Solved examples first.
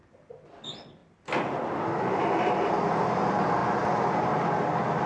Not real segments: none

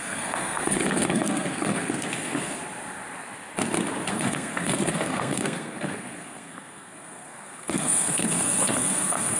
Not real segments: 0.0-2.6 (codec, SNAC); 4.1-9.4

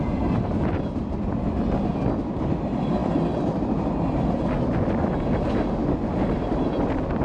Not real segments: none

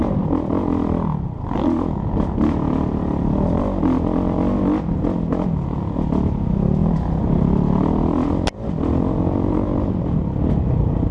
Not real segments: none